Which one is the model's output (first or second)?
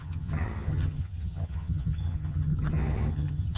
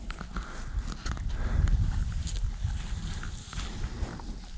first